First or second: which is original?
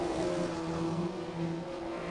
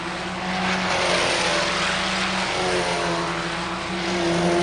second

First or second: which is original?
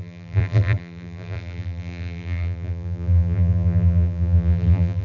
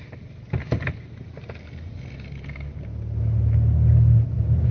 second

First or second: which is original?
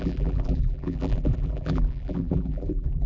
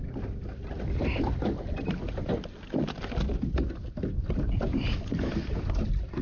second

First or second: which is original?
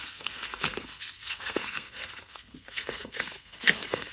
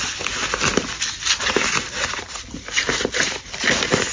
second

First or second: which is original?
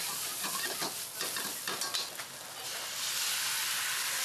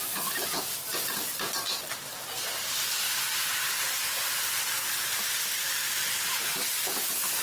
first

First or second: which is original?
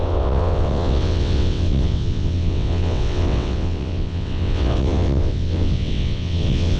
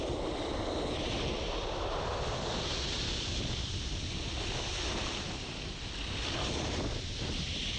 second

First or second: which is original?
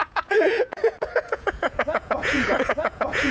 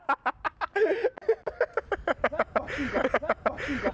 second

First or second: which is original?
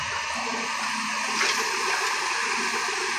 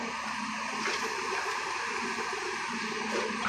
first